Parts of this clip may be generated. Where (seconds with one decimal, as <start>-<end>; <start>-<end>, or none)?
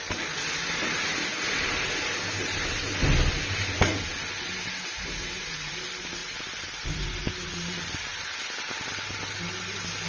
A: none